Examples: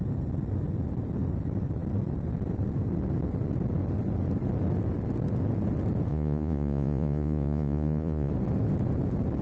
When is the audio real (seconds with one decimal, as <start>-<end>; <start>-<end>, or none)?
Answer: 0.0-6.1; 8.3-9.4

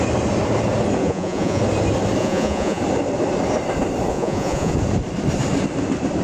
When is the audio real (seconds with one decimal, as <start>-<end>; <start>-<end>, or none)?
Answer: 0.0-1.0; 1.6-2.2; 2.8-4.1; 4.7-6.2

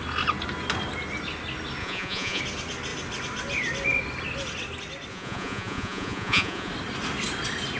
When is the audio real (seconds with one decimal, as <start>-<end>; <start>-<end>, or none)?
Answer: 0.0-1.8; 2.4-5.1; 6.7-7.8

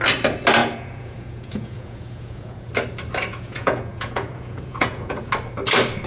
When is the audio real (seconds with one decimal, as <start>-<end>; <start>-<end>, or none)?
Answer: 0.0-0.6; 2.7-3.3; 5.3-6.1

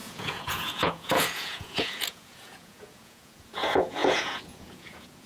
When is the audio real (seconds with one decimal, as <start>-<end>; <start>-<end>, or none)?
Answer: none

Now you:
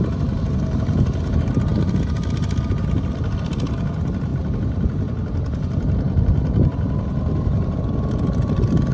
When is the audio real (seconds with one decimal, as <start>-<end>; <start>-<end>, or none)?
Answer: 0.0-8.9

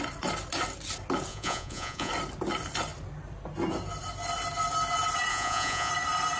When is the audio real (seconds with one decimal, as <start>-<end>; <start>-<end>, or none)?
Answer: 0.0-1.3; 2.1-5.3; 5.9-6.4

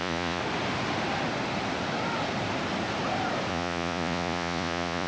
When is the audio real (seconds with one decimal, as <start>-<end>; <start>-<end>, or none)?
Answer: 0.4-3.5